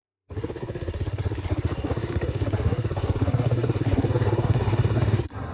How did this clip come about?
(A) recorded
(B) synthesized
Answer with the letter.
B